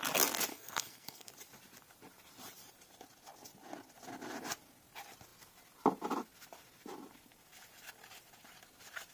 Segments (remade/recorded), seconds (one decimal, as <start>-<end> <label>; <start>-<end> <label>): 0.0-0.5 recorded; 0.5-1.3 remade; 1.3-9.1 recorded